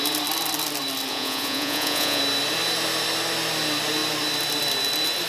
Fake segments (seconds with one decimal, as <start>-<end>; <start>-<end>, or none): 1.1-2.2